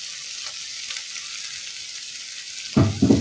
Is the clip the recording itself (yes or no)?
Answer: yes